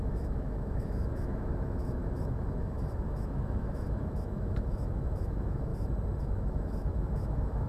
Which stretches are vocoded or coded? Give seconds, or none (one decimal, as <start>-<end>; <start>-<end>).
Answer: 0.0-5.7; 6.2-7.7